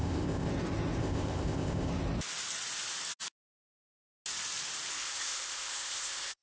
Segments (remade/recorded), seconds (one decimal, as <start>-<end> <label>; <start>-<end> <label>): 0.0-0.5 remade; 0.5-1.0 recorded; 1.0-1.9 remade; 1.9-4.9 recorded; 4.9-6.4 remade

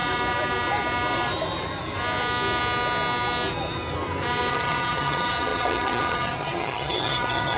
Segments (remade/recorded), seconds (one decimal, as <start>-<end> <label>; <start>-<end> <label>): 0.0-4.5 recorded; 4.5-7.6 remade

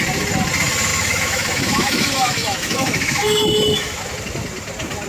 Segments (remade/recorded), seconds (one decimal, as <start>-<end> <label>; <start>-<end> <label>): 0.0-0.9 recorded; 0.9-4.0 remade; 4.0-5.1 recorded

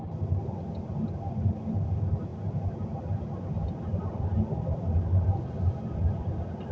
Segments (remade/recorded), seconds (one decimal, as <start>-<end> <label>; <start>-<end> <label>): 0.0-6.7 recorded

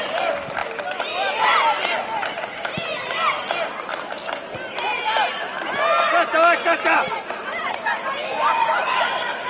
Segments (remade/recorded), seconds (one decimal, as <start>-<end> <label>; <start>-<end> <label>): 0.0-8.2 recorded; 8.2-9.5 remade

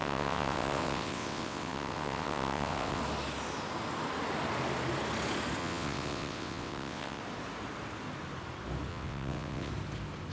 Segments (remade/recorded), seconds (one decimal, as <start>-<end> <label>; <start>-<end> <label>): 0.0-3.0 remade; 3.0-5.6 recorded; 5.6-7.2 remade; 7.2-8.9 recorded; 8.9-9.7 remade; 9.7-10.3 recorded